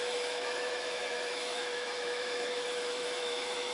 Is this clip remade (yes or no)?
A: yes